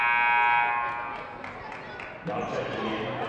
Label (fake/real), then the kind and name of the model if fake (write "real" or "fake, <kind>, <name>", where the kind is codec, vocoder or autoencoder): real